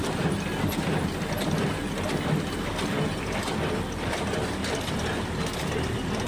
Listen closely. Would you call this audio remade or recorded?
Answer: recorded